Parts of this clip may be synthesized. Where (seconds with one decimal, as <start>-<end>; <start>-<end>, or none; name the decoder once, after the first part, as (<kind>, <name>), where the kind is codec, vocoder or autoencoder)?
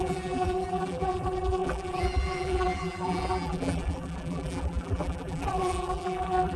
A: 0.0-6.6 (vocoder, BigVGAN v2)